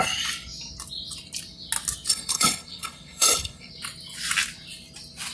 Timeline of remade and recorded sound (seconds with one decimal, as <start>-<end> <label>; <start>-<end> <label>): 0.0-2.1 recorded; 2.1-3.7 remade; 3.7-5.3 recorded